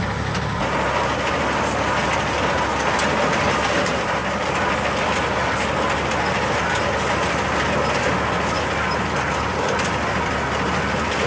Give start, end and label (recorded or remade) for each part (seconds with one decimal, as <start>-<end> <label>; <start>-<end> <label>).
0.0-11.3 recorded